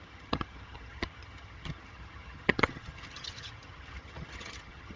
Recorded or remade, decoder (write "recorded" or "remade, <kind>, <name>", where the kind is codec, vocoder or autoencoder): remade, vocoder, HiFi-GAN